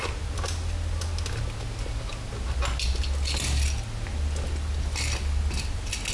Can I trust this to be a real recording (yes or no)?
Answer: yes